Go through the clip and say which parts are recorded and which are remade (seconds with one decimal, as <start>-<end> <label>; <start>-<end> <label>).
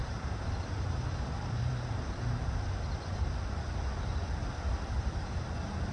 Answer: 0.0-2.5 remade; 2.5-5.9 recorded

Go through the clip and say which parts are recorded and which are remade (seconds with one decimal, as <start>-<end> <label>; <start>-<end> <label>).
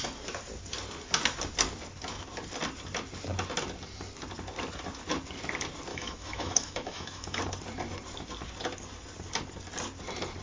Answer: 0.0-5.9 recorded; 5.9-7.4 remade; 7.4-10.4 recorded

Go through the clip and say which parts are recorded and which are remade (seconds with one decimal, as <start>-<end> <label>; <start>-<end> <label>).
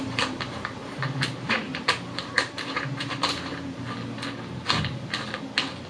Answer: 0.0-3.5 remade; 3.5-5.9 recorded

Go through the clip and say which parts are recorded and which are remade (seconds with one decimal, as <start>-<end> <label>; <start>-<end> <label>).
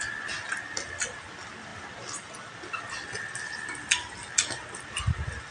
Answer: 0.0-5.5 recorded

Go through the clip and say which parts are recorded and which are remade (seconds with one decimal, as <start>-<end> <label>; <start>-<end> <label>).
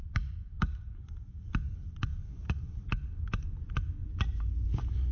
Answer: 0.0-1.5 remade; 1.5-2.4 recorded; 2.4-2.9 remade; 2.9-4.0 recorded; 4.0-5.1 remade